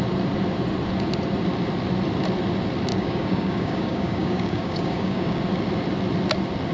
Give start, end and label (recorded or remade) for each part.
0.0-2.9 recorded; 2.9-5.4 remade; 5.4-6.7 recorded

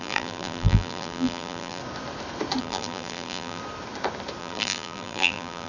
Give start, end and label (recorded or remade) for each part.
0.0-1.8 remade; 1.8-2.6 recorded; 2.6-3.6 remade; 3.6-4.4 recorded; 4.4-5.7 remade

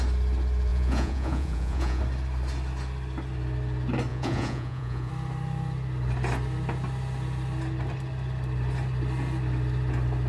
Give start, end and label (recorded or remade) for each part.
0.0-0.7 recorded; 0.7-2.0 remade; 2.0-4.1 recorded; 4.1-5.1 remade; 5.1-10.3 recorded

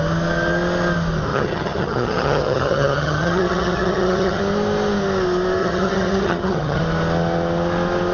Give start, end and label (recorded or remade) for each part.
0.0-1.3 recorded; 1.3-4.4 remade; 4.4-5.6 recorded; 5.6-6.8 remade; 6.8-8.1 recorded

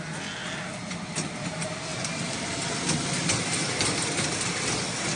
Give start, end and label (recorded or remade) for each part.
0.0-5.2 recorded